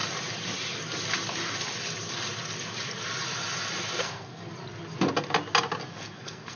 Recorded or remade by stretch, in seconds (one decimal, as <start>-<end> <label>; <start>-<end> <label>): 0.0-4.0 recorded; 4.0-4.5 remade; 4.5-5.9 recorded; 5.9-6.6 remade